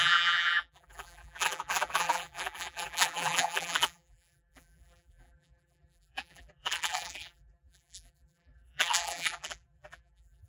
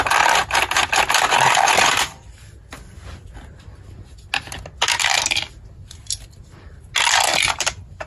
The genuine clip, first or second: second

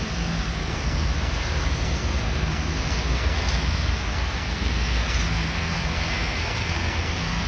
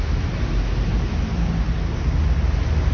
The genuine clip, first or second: second